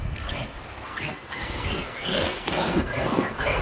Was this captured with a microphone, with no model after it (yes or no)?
no